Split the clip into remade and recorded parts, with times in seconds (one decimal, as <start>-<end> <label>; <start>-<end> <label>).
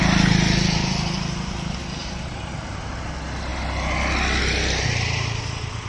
0.0-2.0 recorded; 2.0-2.9 remade; 2.9-5.9 recorded